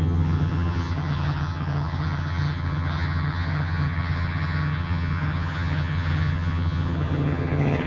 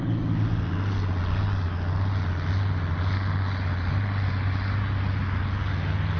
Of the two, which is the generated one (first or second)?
first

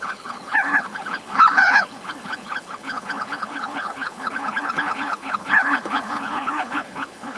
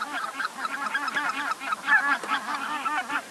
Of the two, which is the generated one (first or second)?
first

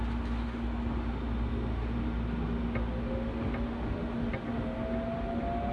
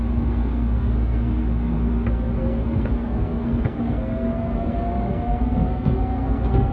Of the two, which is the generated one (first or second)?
second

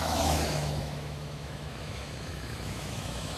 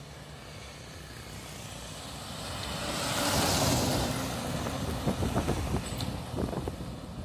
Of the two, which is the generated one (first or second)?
first